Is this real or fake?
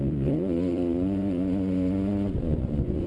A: fake